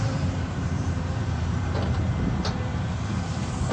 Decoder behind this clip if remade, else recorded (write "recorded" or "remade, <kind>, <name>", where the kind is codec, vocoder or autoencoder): remade, vocoder, BigVGAN v2